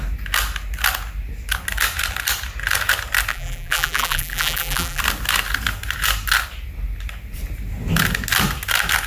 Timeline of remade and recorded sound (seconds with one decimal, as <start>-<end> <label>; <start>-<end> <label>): 0.0-3.3 recorded; 3.3-5.0 remade; 5.0-9.1 recorded